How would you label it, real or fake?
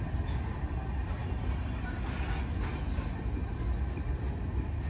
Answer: real